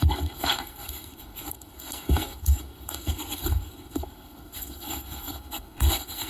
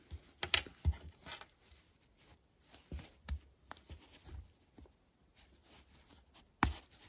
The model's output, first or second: first